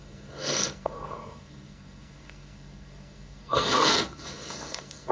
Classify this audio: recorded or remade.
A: remade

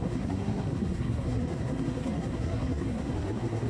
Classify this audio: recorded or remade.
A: remade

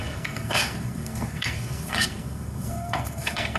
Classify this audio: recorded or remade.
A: remade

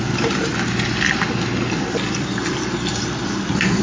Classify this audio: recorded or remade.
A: recorded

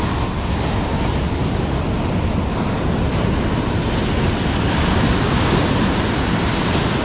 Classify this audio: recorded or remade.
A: recorded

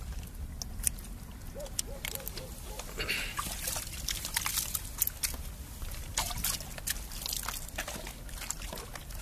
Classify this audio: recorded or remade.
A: recorded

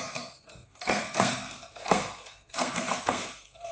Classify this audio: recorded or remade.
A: remade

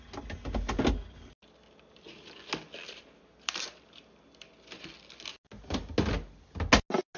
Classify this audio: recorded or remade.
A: recorded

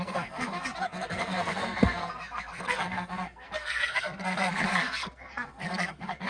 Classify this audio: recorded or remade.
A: remade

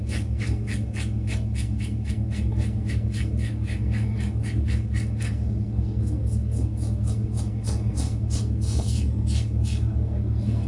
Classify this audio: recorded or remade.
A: remade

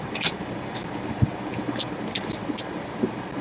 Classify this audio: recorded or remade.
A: recorded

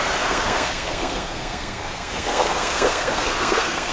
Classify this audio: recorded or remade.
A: remade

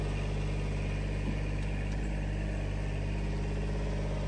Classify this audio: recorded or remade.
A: recorded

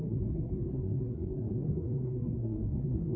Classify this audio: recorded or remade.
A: remade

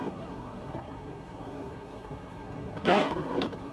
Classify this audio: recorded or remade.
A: remade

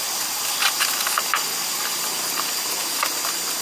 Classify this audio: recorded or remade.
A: recorded